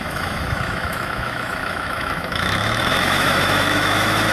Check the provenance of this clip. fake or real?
fake